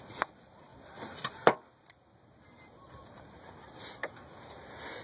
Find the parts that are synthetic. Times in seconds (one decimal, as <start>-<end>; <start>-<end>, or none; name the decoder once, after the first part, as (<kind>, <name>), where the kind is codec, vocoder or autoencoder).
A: none

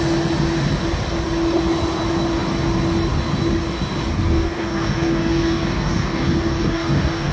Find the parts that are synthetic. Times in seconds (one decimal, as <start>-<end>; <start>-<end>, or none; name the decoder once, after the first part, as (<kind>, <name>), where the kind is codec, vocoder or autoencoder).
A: 4.1-7.3 (codec, DAC)

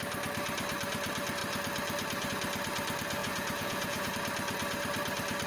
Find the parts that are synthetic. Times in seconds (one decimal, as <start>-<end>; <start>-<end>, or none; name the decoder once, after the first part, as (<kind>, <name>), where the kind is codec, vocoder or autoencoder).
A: 3.2-4.1 (vocoder, Vocos)

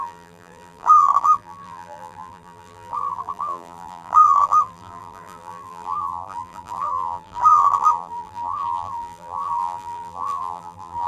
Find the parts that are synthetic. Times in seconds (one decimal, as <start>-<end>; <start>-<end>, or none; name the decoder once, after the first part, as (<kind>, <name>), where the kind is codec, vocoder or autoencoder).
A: 0.0-11.1 (vocoder, BigVGAN v2)

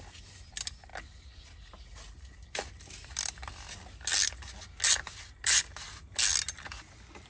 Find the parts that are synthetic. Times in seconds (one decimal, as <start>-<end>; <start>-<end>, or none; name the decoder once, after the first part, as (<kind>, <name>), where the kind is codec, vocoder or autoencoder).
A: none

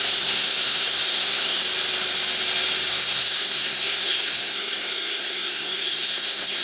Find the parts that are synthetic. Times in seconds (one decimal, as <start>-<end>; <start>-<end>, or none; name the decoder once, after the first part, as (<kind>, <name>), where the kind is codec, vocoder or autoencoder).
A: 0.0-1.6 (codec, SNAC); 2.9-6.6

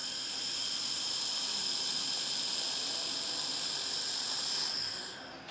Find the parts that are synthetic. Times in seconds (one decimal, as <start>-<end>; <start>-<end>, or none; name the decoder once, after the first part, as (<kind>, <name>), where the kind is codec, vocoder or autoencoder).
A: 3.3-5.5 (vocoder, BigVGAN v2)